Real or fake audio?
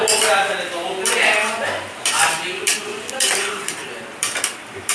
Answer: fake